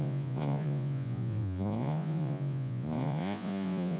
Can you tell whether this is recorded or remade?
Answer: remade